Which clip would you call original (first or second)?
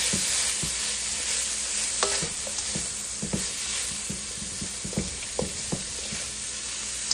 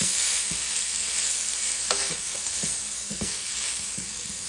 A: first